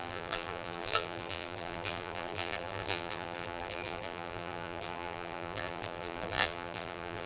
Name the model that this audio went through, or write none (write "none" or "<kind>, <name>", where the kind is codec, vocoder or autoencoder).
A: vocoder, BigVGAN v2